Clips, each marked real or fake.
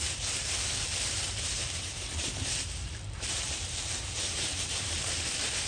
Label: fake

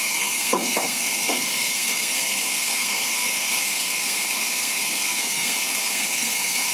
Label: fake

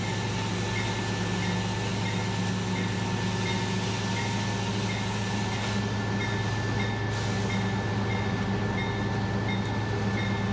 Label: real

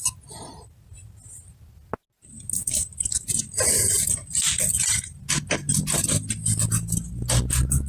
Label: real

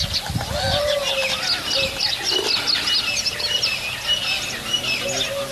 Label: real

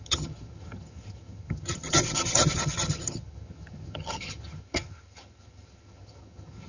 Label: fake